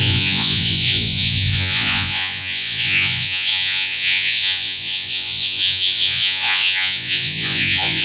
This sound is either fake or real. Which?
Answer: fake